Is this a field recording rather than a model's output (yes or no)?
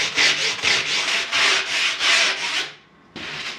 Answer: yes